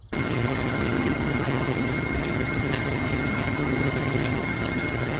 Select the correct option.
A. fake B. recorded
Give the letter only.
A